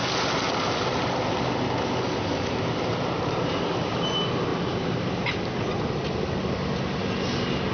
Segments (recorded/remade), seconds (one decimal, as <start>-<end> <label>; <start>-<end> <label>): 0.0-4.5 recorded; 4.5-5.3 remade; 5.3-7.7 recorded